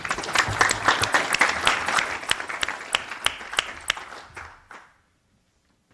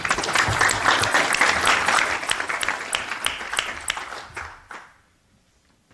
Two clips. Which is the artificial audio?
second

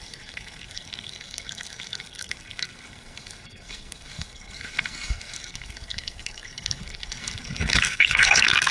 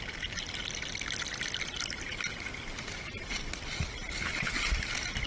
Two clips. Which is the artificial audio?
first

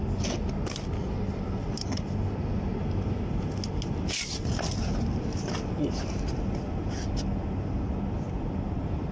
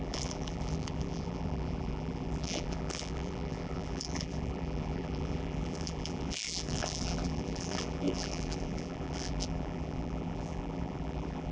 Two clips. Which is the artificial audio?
second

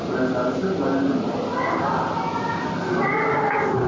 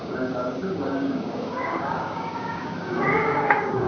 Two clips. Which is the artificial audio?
second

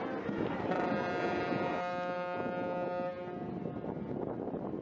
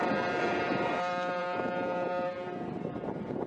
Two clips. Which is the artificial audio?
second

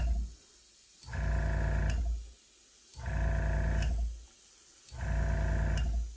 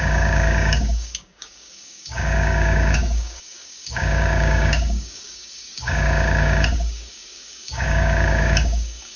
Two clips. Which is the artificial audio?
second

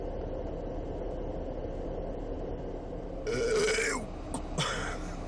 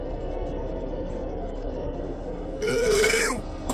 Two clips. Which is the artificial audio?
second